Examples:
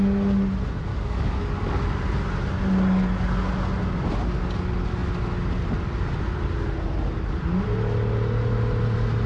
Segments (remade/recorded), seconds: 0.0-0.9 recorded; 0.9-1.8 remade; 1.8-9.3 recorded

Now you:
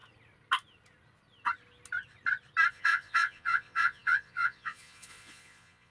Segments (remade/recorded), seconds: 0.0-2.7 recorded; 2.7-5.9 remade

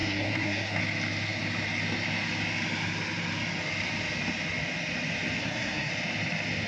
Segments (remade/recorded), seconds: 0.0-0.8 remade; 0.8-5.4 recorded; 5.4-5.9 remade; 5.9-6.7 recorded

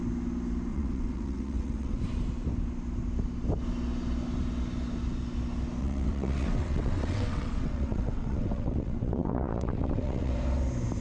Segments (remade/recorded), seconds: 0.0-0.7 recorded; 0.7-2.0 remade; 2.0-5.8 recorded; 5.8-10.3 remade; 10.3-11.0 recorded

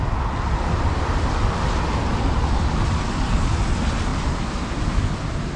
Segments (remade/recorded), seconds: 0.0-5.6 recorded

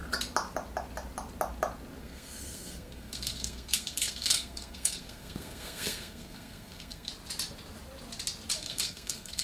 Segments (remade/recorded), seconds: 0.0-2.0 recorded; 2.0-7.1 remade; 7.1-8.6 recorded; 8.6-9.4 remade